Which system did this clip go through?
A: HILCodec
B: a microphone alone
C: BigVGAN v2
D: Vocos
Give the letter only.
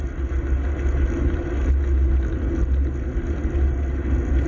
B